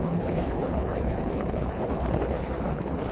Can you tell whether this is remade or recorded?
remade